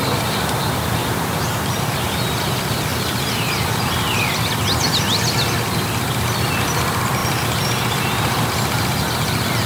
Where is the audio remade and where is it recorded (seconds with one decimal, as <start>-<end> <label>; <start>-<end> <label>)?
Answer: 0.0-1.0 recorded; 1.0-2.0 remade; 2.0-2.9 recorded; 2.9-3.9 remade; 3.9-7.2 recorded; 7.2-9.0 remade; 9.0-9.7 recorded